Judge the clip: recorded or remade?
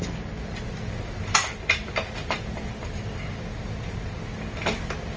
recorded